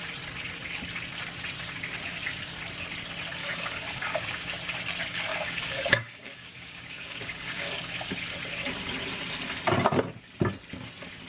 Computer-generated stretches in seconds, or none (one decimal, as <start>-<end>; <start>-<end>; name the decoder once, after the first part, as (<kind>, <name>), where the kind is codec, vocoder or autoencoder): 3.4-4.5 (codec, DAC); 5.3-7.8